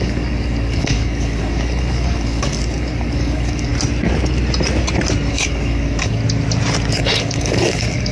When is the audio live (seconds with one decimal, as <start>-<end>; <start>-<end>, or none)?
3.7-5.3; 6.2-6.9